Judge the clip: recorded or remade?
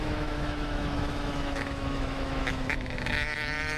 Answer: remade